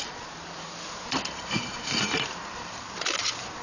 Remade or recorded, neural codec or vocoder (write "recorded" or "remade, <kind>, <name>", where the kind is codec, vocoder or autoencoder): remade, vocoder, BigVGAN v2